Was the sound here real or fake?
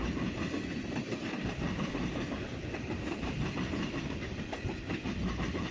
fake